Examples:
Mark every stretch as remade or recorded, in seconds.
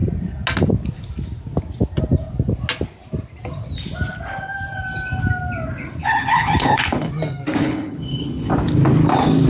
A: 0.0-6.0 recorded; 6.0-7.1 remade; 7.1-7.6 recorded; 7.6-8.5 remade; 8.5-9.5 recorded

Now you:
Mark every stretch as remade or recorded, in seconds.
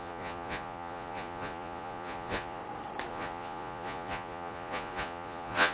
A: 0.0-2.6 remade; 2.6-3.1 recorded; 3.1-5.7 remade